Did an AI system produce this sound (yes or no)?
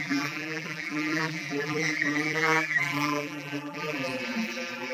yes